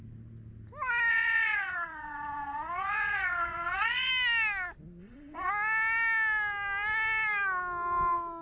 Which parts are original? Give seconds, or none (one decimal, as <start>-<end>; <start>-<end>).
0.0-1.1; 4.1-5.0; 5.5-8.4